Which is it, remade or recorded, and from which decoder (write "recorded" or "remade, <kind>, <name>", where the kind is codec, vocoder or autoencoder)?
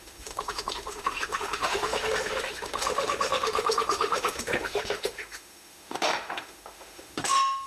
remade, autoencoder, DAC-VAE